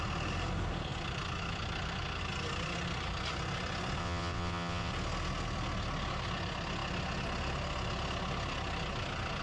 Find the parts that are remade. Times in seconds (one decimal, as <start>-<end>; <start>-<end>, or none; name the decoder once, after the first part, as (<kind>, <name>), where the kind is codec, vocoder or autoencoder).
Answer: 4.0-4.9 (vocoder, WaveNeXt)